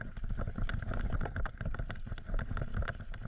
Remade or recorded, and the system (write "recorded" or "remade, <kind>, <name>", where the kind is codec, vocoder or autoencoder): recorded